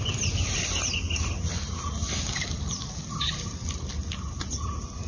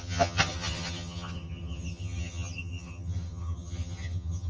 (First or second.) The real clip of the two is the first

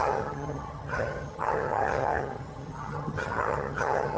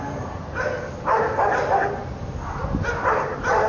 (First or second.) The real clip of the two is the second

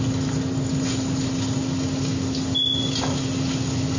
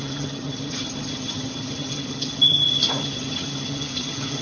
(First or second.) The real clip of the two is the first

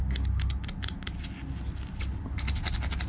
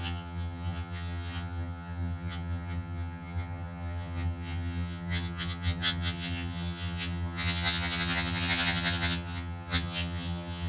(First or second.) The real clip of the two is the first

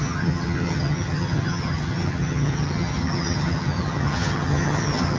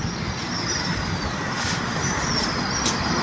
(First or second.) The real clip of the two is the second